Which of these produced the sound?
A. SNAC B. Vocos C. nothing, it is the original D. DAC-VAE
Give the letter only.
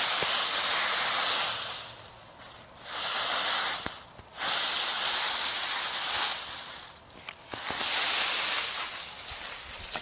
C